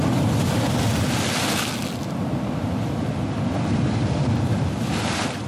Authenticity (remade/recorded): recorded